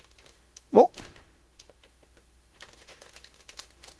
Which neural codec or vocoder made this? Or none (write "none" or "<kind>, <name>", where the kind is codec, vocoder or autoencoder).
autoencoder, DAC-VAE